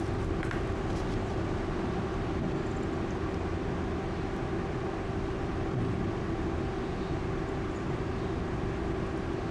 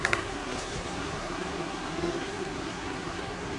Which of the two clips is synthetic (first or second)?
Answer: second